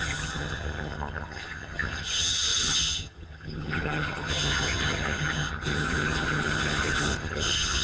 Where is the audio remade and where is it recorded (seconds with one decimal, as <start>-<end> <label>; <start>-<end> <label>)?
0.0-7.8 remade